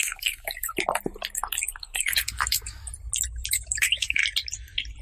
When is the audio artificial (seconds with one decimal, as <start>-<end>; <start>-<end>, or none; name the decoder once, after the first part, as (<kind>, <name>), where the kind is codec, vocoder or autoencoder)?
0.0-0.7 (codec, DAC); 1.8-2.8; 3.5-4.2